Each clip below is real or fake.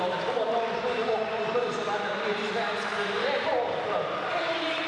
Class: real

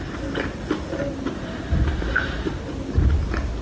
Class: real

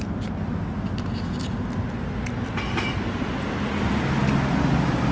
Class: real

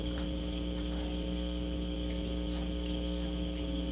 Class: real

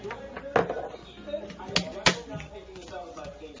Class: real